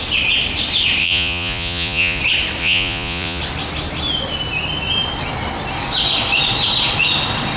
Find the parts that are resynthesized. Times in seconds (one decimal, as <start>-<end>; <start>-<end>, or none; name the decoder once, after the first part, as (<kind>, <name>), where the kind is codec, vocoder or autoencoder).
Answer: 1.0-2.2 (vocoder, Vocos); 2.6-3.4